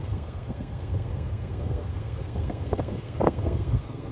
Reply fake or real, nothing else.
fake